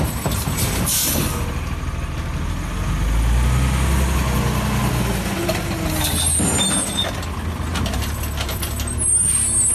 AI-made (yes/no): no